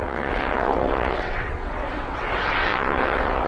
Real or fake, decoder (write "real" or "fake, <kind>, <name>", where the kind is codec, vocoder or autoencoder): fake, vocoder, WaveNeXt